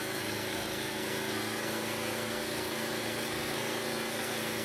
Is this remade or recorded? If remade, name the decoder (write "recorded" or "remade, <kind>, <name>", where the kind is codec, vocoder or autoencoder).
remade, codec, SNAC